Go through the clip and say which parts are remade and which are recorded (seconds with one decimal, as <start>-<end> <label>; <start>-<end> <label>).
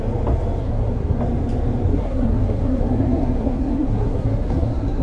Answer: 0.0-0.6 recorded; 0.6-1.2 remade; 1.2-1.9 recorded; 1.9-5.0 remade